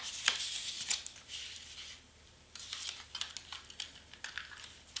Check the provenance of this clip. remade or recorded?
recorded